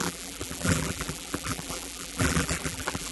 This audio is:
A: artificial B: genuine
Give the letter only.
A